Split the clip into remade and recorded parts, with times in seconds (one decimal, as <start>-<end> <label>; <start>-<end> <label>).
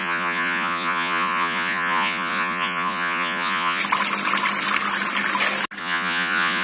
0.0-3.8 remade; 3.8-5.8 recorded; 5.8-6.6 remade